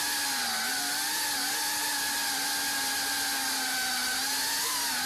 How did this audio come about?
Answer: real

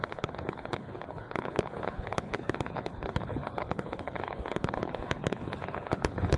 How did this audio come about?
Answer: fake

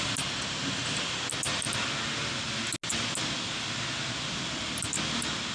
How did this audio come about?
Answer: real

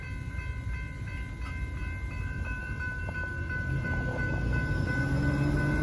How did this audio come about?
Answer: real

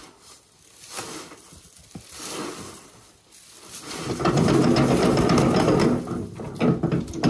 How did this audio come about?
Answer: real